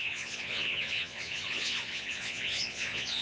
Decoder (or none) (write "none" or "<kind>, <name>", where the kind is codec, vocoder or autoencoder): vocoder, Vocos